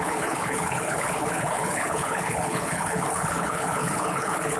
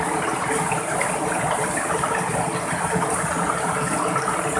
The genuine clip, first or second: second